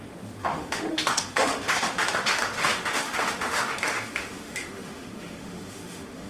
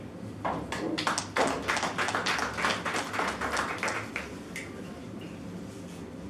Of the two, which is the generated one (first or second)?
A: first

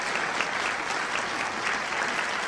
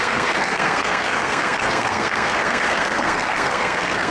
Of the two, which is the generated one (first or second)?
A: second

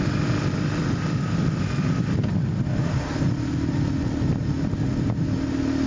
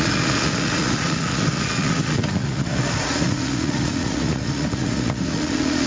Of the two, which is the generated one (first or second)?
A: second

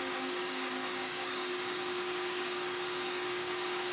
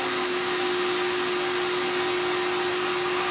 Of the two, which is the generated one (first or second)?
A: first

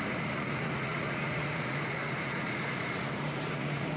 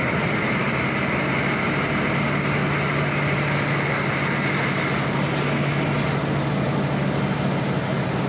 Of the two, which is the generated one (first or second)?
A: first